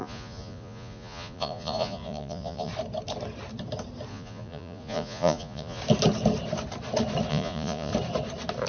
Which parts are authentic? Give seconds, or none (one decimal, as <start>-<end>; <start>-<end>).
2.7-4.1; 5.8-7.3; 7.9-8.7